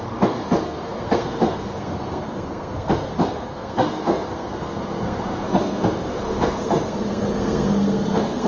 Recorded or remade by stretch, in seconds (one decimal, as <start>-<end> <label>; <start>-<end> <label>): 0.0-8.5 remade